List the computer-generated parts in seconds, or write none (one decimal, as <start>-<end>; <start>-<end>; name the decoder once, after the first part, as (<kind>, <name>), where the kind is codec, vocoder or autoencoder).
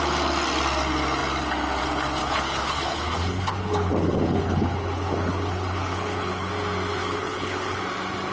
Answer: 2.2-6.5 (codec, HILCodec); 7.0-7.8